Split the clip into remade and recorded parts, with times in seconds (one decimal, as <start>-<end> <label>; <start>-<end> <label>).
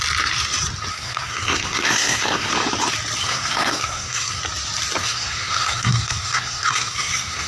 0.0-0.9 recorded; 0.9-2.5 remade; 2.5-3.2 recorded; 3.2-4.4 remade; 4.4-5.0 recorded; 5.0-7.5 remade